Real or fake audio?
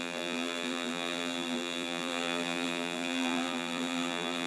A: fake